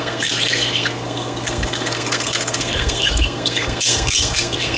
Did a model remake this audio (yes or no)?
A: yes